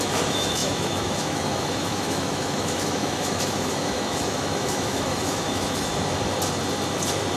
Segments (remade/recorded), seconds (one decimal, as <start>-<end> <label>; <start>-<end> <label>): 0.0-5.9 remade; 5.9-7.4 recorded